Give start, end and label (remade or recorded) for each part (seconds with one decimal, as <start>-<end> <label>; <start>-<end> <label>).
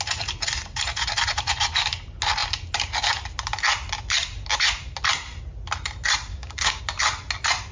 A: 0.0-6.3 recorded; 6.3-6.8 remade; 6.8-7.7 recorded